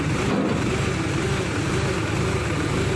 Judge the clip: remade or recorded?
recorded